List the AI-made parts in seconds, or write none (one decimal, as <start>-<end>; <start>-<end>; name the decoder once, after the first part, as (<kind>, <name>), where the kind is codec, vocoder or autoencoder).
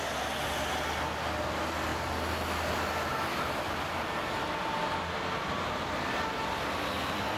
none